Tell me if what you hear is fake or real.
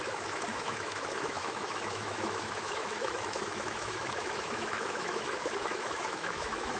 fake